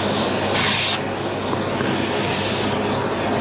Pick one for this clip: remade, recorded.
recorded